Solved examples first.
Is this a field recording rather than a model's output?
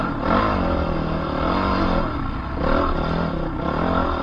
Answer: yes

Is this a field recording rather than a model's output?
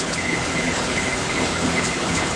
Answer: no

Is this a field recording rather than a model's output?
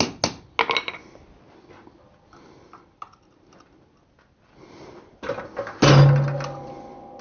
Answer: yes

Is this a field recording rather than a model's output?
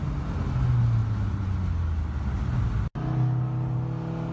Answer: yes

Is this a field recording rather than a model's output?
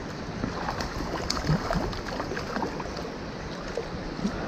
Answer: yes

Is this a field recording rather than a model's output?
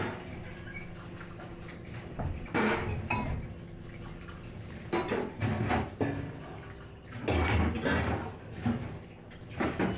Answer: yes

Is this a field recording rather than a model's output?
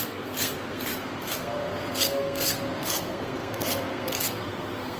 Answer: no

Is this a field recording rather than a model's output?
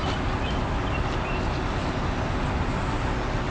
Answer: yes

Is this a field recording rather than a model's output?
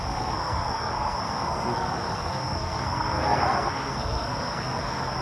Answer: no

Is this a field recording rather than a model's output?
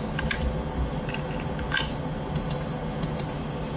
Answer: no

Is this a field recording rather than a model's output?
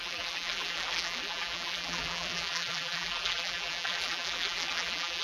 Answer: no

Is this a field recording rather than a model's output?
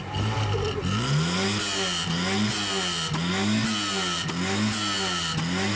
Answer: yes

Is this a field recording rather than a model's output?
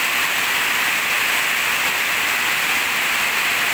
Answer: yes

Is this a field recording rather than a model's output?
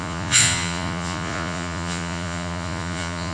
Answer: no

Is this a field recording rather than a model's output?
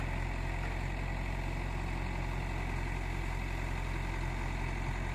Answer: yes